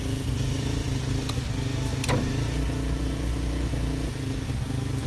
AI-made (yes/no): no